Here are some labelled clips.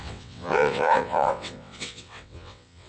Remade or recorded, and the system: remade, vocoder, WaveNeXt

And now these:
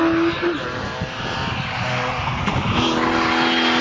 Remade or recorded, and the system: recorded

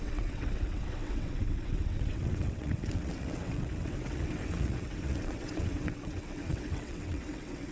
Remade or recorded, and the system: remade, vocoder, WaveNeXt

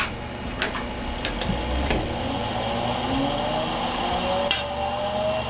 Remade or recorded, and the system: recorded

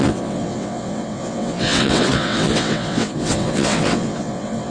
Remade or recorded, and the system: remade, vocoder, WaveNeXt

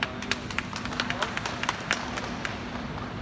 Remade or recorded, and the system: recorded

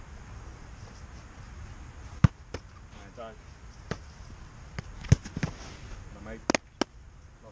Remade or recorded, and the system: recorded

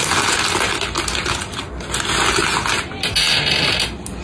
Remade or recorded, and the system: recorded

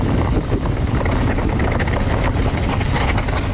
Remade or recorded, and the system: recorded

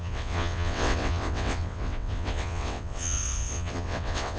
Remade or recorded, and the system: remade, vocoder, WaveNeXt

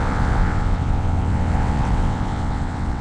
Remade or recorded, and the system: remade, vocoder, WaveNeXt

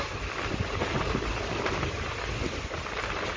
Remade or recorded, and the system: recorded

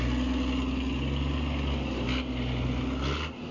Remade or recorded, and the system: recorded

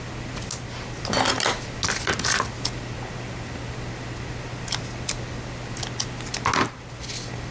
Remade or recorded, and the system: recorded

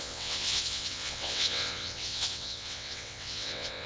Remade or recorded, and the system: remade, vocoder, WaveNeXt